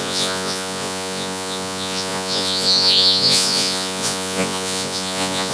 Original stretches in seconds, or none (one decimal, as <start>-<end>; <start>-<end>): none